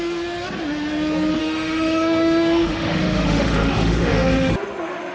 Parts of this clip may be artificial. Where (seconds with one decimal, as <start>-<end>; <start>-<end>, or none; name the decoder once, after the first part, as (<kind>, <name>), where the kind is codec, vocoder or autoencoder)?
1.4-4.5 (autoencoder, DAC-VAE)